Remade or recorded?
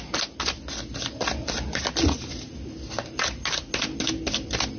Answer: recorded